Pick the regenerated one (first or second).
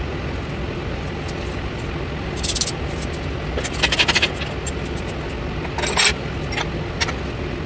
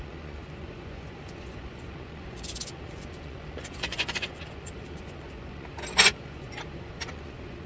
second